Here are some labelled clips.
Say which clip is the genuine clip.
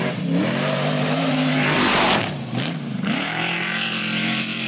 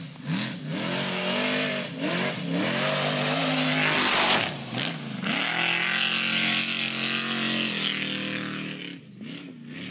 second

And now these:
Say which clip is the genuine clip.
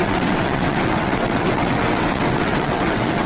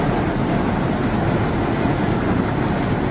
second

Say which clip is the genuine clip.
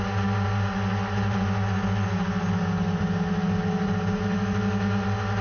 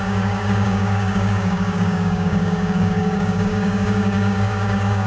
first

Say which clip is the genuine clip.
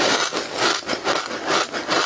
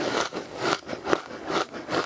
first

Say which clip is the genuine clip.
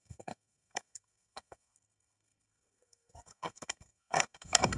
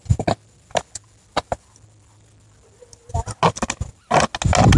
second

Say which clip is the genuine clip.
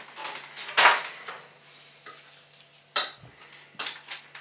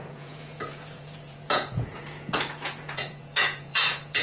first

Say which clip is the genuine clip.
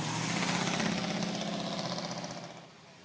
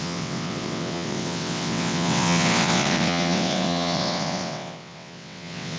first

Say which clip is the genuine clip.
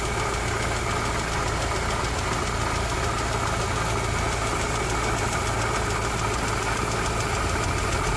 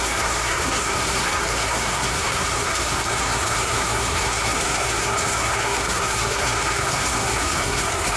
first